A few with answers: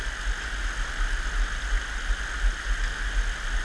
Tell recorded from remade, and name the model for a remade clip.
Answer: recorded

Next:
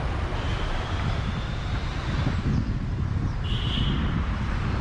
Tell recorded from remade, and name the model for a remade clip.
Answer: remade, vocoder, BigVGAN v2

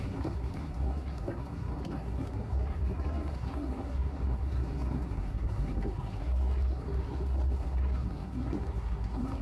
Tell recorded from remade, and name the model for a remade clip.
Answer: remade, codec, SNAC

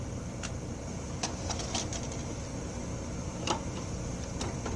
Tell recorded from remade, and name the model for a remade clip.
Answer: recorded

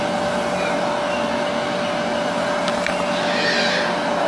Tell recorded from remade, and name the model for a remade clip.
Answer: recorded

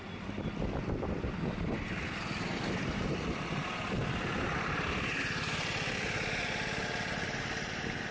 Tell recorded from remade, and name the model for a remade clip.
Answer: recorded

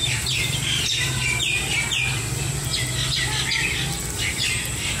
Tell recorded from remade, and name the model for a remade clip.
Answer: recorded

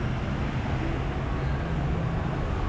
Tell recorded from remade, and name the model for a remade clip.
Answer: recorded